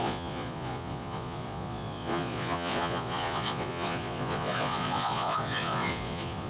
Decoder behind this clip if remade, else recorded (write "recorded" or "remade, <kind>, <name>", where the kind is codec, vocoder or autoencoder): remade, vocoder, Vocos